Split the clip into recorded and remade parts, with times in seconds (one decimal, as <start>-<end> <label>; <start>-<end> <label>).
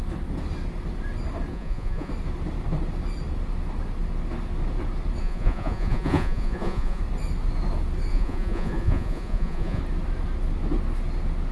0.0-1.5 recorded; 1.5-2.1 remade; 2.1-5.2 recorded; 5.2-7.0 remade; 7.0-8.1 recorded; 8.1-9.8 remade; 9.8-11.5 recorded